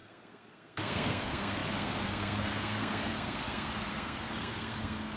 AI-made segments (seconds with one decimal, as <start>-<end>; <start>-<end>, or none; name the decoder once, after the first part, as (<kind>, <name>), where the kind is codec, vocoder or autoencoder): 0.0-5.2 (codec, SNAC)